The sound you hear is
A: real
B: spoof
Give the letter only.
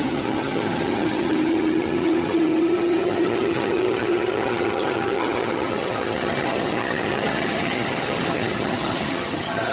B